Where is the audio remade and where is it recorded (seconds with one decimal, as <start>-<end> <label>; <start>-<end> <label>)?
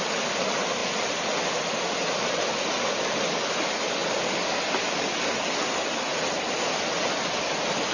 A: 0.0-7.9 recorded